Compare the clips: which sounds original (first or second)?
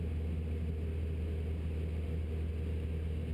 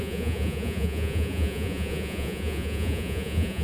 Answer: first